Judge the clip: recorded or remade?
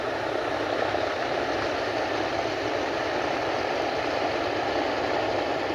recorded